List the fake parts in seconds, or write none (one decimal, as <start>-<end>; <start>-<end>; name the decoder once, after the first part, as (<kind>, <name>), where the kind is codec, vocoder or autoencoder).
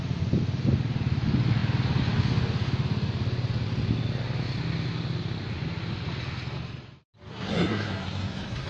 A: 7.3-8.7 (codec, SNAC)